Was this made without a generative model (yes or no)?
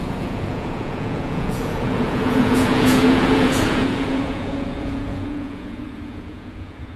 no